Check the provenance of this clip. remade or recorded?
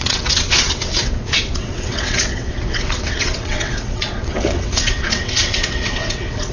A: remade